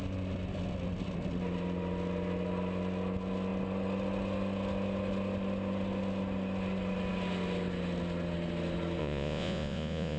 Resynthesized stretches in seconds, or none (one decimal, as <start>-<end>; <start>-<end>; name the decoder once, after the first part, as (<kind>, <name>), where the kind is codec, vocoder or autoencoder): 9.0-10.2 (vocoder, Vocos)